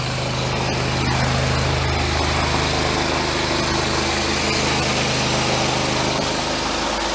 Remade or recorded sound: recorded